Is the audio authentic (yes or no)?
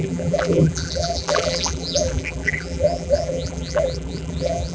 no